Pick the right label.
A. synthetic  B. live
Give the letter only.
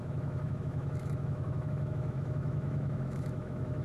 A